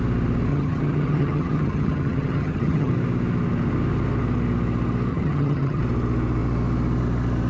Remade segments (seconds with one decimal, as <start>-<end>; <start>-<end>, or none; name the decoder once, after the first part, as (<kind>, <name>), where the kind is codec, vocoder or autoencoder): 0.5-2.9 (vocoder, HiFi-GAN); 5.1-5.8